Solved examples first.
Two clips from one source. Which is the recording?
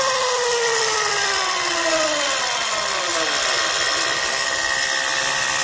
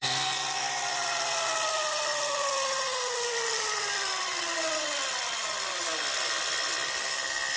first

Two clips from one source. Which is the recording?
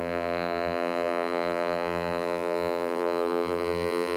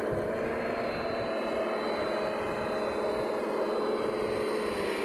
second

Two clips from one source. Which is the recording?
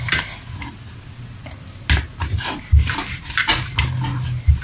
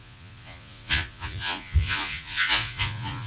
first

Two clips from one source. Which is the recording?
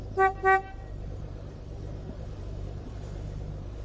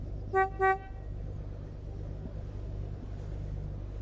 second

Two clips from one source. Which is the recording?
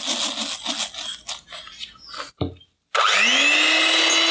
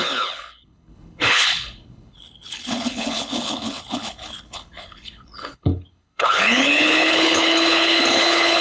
first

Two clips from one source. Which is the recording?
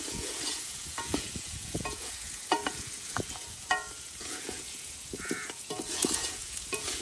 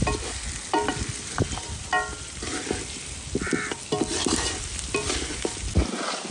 second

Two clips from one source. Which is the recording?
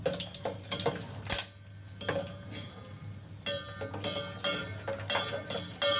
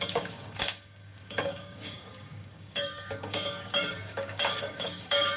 first